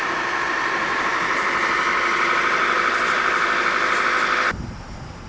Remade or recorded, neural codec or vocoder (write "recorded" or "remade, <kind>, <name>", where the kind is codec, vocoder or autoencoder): recorded